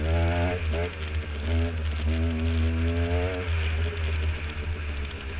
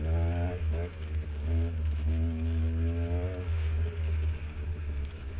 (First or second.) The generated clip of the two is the second